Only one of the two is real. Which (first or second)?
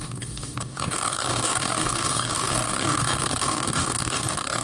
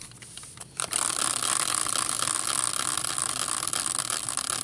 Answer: second